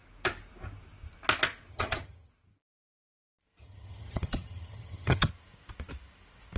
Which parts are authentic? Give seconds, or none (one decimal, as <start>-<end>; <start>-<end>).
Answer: 0.0-1.7; 2.3-3.6; 5.3-6.6

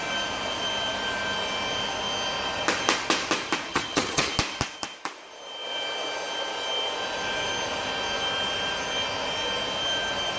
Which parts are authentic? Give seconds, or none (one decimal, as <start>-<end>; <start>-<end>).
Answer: 0.0-3.7; 4.3-10.4

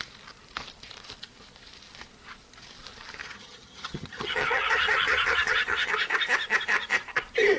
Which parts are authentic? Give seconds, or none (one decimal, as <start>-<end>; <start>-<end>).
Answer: 0.0-3.2; 5.9-7.6

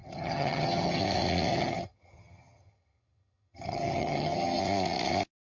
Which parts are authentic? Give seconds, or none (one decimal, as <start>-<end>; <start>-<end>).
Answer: 1.0-1.5; 4.6-5.5

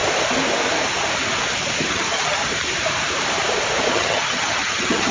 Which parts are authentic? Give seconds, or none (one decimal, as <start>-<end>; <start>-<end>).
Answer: 0.0-1.9; 2.4-3.9

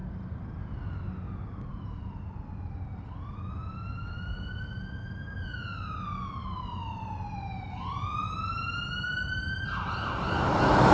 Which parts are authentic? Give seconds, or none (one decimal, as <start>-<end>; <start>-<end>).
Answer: 0.0-10.9

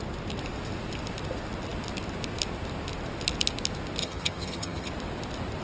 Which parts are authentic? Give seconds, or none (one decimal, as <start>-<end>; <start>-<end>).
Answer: 0.0-4.0; 4.9-5.6

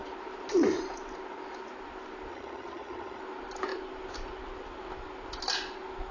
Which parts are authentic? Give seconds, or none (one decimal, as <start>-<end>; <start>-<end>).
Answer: 0.0-2.3; 3.2-6.1